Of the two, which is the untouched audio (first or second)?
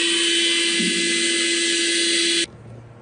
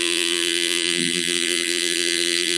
first